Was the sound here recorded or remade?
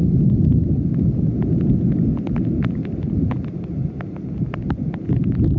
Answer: recorded